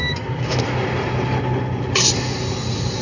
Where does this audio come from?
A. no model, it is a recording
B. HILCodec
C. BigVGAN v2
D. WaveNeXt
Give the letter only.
A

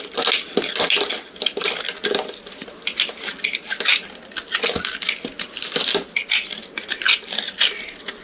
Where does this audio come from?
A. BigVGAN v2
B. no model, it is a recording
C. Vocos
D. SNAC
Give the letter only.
B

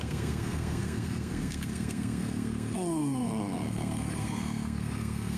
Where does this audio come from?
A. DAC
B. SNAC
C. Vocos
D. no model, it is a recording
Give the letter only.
B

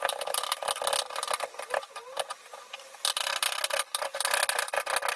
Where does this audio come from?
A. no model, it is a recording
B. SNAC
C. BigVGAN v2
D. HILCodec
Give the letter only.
A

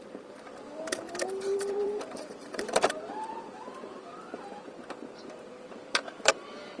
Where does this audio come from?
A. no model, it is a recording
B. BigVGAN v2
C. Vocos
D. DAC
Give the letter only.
B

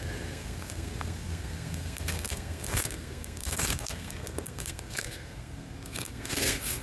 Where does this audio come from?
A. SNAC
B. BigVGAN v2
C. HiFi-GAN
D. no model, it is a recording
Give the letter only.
A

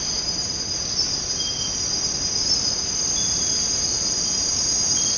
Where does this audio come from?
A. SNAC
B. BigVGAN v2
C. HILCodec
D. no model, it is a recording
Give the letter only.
B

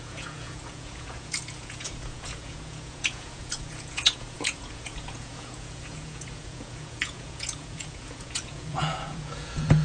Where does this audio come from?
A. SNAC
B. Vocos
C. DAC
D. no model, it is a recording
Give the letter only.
B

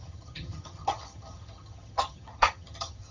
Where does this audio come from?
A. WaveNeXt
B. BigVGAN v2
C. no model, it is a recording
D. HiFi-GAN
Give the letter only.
D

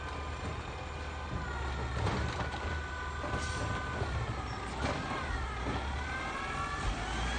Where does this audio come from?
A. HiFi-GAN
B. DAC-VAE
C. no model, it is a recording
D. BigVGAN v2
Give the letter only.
C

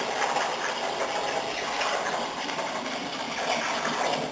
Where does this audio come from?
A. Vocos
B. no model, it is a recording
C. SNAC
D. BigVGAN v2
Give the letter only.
B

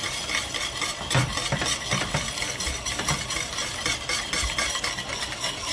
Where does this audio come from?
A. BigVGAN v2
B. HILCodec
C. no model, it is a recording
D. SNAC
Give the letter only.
C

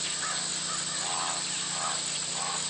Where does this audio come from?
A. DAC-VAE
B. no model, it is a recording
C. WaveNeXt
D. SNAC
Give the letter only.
B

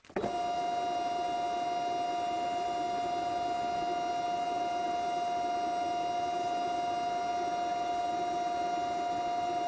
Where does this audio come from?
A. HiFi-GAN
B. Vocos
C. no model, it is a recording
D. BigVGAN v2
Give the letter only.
C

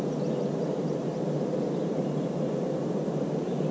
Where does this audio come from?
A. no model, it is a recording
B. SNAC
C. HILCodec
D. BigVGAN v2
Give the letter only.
A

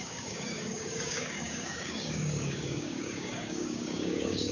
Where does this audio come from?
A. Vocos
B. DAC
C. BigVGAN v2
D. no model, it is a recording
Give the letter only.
B